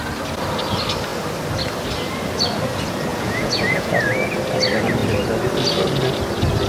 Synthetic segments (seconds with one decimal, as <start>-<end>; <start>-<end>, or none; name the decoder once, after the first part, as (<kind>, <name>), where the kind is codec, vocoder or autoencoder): 3.1-4.1 (vocoder, Vocos)